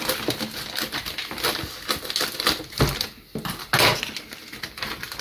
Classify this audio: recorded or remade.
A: recorded